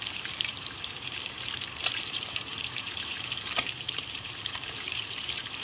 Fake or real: fake